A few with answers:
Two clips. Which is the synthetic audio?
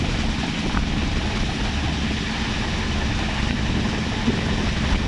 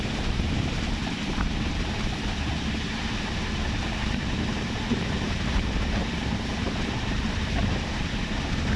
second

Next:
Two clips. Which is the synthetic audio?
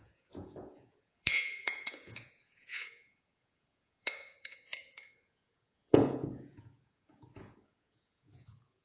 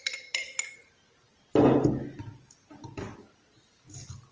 first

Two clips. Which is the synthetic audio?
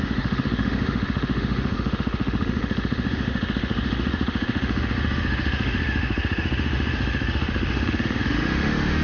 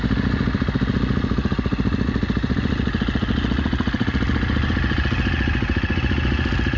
first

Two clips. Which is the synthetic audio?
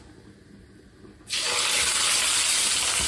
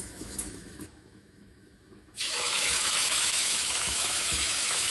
second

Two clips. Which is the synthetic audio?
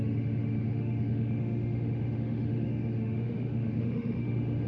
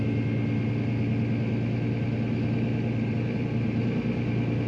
first